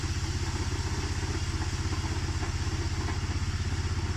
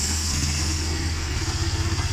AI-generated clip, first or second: second